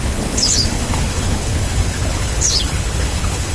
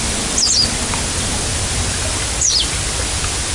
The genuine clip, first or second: second